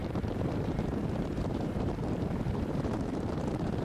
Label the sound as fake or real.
fake